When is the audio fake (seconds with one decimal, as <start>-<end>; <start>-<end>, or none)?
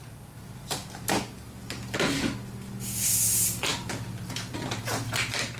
none